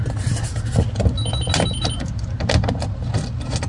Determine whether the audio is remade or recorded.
recorded